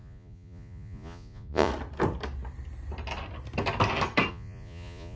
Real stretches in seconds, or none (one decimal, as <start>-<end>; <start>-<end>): 1.7-4.3